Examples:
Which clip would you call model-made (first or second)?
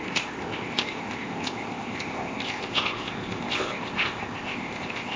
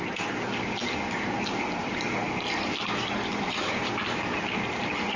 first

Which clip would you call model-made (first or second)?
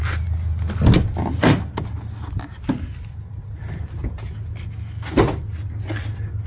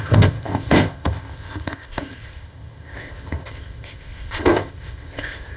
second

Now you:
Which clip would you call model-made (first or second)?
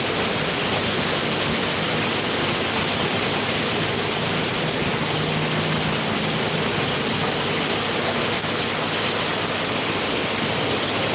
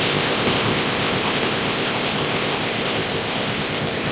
second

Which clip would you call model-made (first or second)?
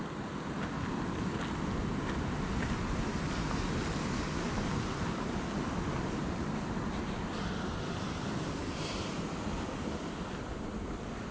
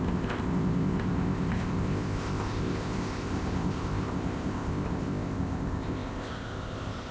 second